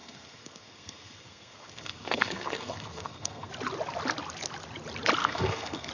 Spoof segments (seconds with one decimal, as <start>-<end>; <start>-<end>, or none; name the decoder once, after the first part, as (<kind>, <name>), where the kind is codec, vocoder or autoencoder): 0.0-3.5 (codec, SNAC); 5.2-5.9